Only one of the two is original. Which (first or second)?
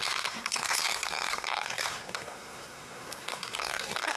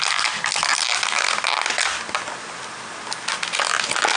second